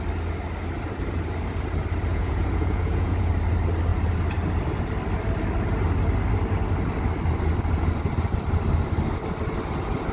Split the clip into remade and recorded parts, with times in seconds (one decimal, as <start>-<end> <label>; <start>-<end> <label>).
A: 0.0-2.1 recorded; 2.1-3.3 remade; 3.3-10.1 recorded